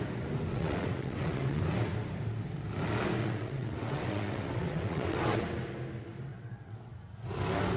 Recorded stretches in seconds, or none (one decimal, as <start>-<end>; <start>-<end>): 0.0-0.5; 1.6-3.2; 5.4-6.3; 6.9-7.8